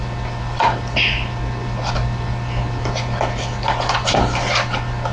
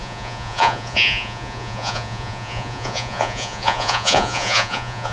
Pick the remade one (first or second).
second